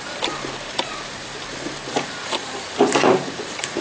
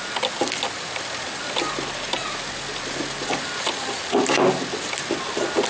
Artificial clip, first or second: first